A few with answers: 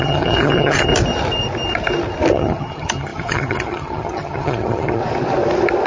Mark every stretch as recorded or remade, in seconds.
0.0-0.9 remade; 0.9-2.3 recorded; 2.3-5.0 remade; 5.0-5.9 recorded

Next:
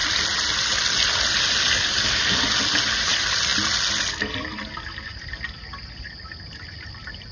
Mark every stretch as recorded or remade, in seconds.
0.0-7.3 recorded

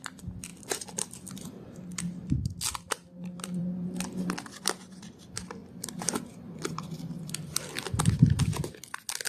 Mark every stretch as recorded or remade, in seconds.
0.0-0.5 recorded; 0.5-5.0 remade; 5.0-9.3 recorded

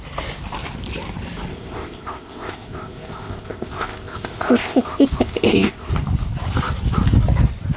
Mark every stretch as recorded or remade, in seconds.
0.0-1.5 recorded; 1.5-5.9 remade; 5.9-7.8 recorded

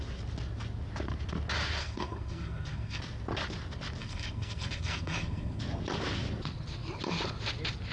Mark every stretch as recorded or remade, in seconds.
0.0-1.8 recorded; 1.8-3.0 remade; 3.0-4.0 recorded; 4.0-5.6 remade; 5.6-7.9 recorded

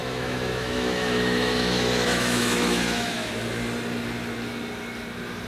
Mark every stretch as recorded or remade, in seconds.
0.0-3.3 remade; 3.3-5.5 recorded